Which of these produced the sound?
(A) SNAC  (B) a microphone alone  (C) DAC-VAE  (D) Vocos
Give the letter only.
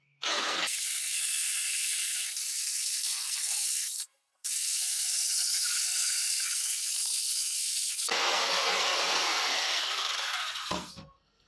A